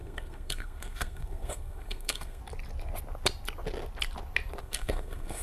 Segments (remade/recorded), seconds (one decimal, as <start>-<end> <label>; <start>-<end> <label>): 0.0-2.4 remade; 2.4-4.6 recorded; 4.6-5.4 remade